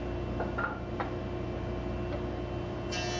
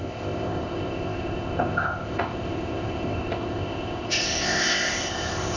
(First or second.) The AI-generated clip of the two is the second